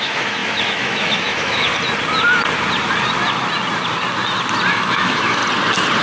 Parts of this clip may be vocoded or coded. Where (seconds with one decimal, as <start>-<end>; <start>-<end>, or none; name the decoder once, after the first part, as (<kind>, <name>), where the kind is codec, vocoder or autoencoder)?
0.0-1.7 (autoencoder, DAC-VAE); 4.7-5.4